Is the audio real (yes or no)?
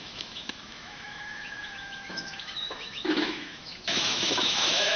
no